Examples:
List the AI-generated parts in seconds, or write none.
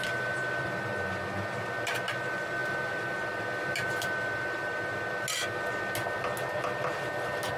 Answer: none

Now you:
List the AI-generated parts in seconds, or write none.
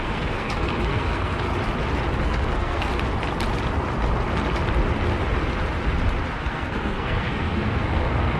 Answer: 0.0-1.5 (codec, SNAC); 2.2-2.9; 6.3-8.4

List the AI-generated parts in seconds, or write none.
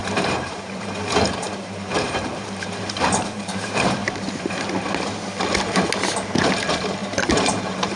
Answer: 0.0-4.0 (vocoder, BigVGAN v2); 6.4-8.0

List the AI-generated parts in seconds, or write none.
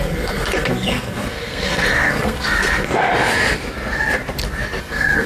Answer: 0.0-3.1 (codec, SNAC); 4.8-5.3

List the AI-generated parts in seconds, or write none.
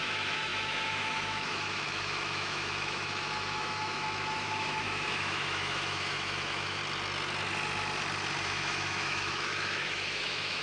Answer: 0.0-6.8 (autoencoder, DAC-VAE); 8.4-10.6